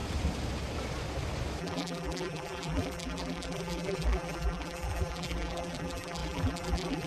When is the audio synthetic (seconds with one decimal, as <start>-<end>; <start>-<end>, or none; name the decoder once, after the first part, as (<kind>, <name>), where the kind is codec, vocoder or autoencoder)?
1.6-7.1 (vocoder, BigVGAN v2)